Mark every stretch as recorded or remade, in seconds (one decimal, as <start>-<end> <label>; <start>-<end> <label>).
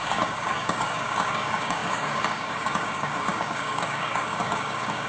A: 0.0-5.1 remade